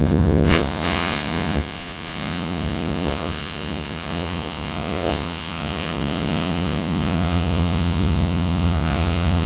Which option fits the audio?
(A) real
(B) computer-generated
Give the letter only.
B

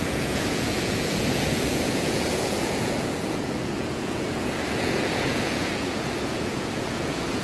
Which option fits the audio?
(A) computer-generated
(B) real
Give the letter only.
A